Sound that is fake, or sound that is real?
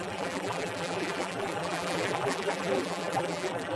fake